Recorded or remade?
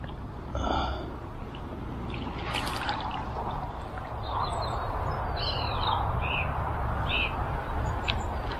recorded